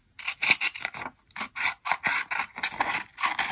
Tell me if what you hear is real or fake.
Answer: real